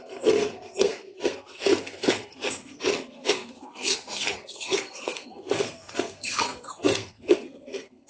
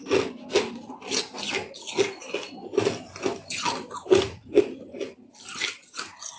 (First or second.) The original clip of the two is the second